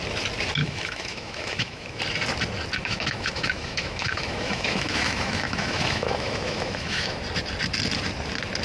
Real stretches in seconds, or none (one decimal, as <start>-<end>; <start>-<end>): 0.0-0.6; 2.0-2.8; 7.2-8.6